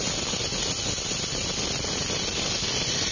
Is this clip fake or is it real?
real